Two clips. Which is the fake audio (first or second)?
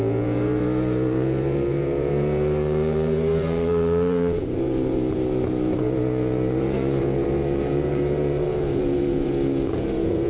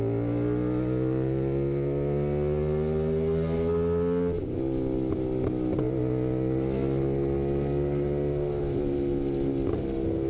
first